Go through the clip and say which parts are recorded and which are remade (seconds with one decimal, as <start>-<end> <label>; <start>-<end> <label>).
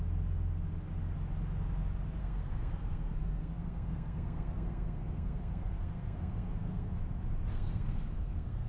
0.0-2.2 recorded; 2.2-7.0 remade; 7.0-7.5 recorded; 7.5-8.7 remade